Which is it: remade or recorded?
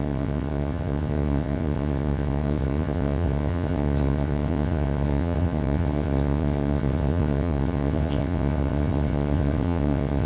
remade